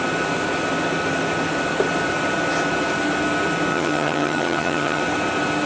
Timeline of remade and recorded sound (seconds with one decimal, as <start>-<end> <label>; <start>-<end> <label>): 0.0-3.7 recorded; 3.7-5.0 remade; 5.0-5.7 recorded